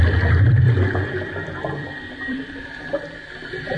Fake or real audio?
fake